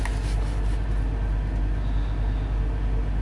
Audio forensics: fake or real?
real